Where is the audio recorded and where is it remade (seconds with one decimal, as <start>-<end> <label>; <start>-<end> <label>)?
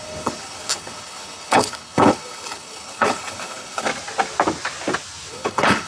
0.0-3.9 remade; 3.9-5.3 recorded; 5.3-5.9 remade